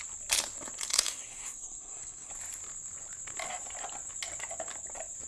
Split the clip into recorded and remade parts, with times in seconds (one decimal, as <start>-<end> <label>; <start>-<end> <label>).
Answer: 0.0-0.9 recorded; 0.9-2.3 remade; 2.3-5.3 recorded